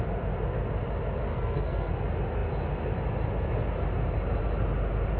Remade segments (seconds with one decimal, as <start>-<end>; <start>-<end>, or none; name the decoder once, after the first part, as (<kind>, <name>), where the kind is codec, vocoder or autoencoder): 1.3-1.9 (codec, SNAC)